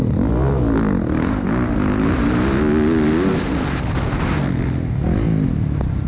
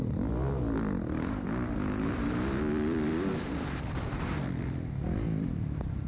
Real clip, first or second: first